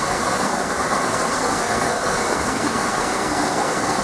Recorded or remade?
remade